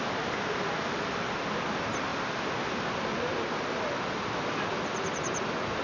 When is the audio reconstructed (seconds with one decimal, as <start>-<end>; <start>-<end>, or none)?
none